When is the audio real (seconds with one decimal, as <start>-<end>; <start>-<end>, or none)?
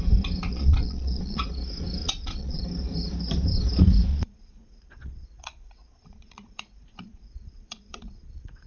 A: 0.0-0.5; 1.4-2.0; 2.6-4.1